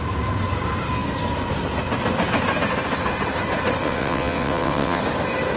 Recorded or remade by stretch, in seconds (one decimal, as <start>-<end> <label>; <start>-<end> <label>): 0.0-3.8 recorded; 3.8-5.0 remade; 5.0-5.6 recorded